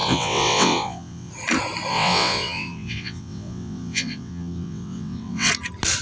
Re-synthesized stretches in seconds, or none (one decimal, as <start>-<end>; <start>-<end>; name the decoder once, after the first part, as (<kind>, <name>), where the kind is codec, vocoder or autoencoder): 0.0-1.3 (vocoder, WaveNeXt); 1.9-5.5

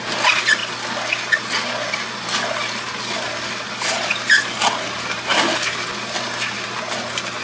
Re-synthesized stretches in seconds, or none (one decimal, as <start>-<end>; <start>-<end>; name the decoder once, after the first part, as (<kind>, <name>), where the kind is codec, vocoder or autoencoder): none